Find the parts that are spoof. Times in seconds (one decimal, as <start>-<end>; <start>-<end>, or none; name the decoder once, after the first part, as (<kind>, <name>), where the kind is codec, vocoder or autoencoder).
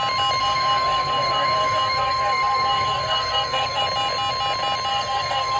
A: 0.4-3.8 (codec, SNAC); 4.9-5.6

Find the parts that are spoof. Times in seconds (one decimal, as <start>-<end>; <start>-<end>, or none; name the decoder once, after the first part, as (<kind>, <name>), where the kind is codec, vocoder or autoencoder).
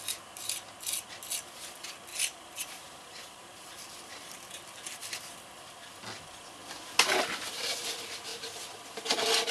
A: 2.1-3.7 (vocoder, BigVGAN v2); 8.3-8.8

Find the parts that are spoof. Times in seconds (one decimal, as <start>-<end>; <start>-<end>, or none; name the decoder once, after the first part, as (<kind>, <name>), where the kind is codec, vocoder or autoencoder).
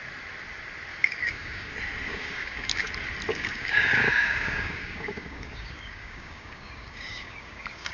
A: 0.9-1.7 (codec, DAC); 2.1-2.9; 3.3-7.9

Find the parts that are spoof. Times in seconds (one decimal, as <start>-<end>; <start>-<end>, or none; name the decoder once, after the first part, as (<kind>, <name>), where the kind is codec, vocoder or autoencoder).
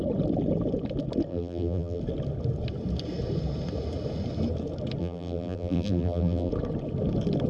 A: 1.3-2.0 (vocoder, BigVGAN v2); 5.0-6.5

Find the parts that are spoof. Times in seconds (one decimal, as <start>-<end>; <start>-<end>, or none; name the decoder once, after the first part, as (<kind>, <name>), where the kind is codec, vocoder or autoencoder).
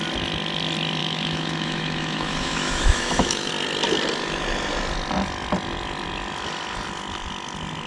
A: 1.0-3.5 (autoencoder, DAC-VAE)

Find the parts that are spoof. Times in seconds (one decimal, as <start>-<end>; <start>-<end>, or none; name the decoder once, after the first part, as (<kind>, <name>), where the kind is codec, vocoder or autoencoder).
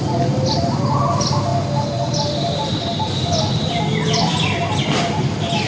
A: none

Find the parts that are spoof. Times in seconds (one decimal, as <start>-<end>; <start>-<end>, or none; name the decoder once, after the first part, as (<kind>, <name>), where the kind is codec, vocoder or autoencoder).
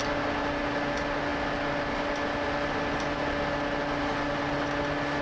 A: none